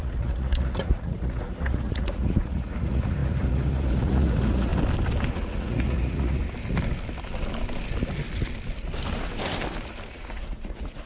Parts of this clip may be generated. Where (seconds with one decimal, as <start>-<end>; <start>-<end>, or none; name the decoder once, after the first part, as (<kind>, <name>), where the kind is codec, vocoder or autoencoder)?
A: 0.0-4.7 (vocoder, Vocos); 5.3-6.4; 10.1-11.1